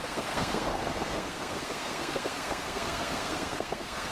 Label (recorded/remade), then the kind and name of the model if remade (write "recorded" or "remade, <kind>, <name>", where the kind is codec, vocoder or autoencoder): remade, codec, SNAC